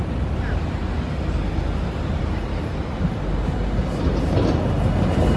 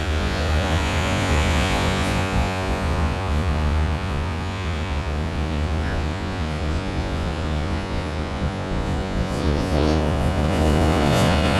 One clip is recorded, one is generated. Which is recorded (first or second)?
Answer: first